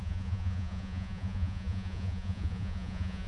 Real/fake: fake